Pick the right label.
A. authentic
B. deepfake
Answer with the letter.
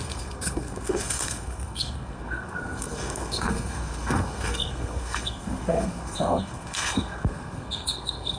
B